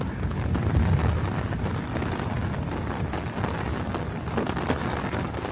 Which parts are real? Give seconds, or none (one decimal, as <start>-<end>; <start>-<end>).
0.0-5.5